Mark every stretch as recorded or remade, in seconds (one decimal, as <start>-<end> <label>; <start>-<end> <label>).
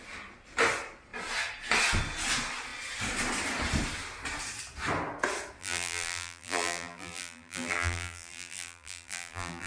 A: 0.0-5.6 recorded; 5.6-9.7 remade